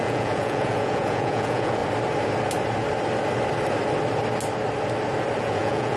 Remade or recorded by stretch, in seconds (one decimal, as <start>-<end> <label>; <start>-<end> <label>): 0.0-1.8 remade; 1.8-5.4 recorded; 5.4-6.0 remade